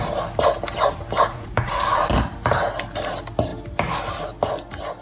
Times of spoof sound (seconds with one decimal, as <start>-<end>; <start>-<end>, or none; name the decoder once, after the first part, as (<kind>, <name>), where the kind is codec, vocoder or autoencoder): 1.3-2.1 (vocoder, Vocos)